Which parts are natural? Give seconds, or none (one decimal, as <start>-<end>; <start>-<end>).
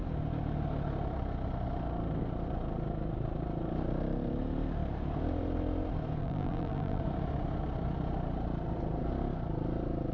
0.0-6.2; 7.0-10.1